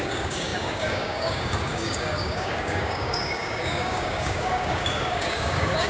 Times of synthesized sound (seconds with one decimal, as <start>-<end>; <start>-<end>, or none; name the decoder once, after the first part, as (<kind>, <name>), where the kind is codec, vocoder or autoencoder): 0.0-5.9 (codec, DAC)